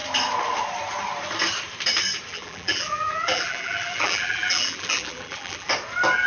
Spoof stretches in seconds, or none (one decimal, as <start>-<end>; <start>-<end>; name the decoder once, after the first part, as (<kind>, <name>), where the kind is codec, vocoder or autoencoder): 2.3-5.7 (vocoder, BigVGAN v2)